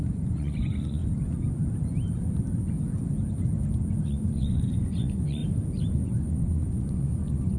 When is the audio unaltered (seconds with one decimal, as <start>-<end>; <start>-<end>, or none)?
1.0-4.0; 5.4-5.9